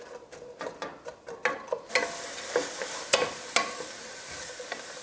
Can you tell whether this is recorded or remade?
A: recorded